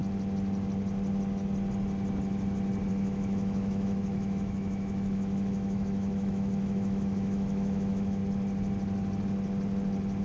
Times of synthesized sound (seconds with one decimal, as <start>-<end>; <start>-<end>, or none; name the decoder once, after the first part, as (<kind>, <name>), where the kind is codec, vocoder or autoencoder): 2.9-8.2 (autoencoder, DAC-VAE)